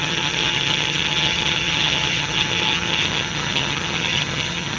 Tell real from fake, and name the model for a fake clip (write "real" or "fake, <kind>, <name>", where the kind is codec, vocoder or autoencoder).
fake, vocoder, HiFi-GAN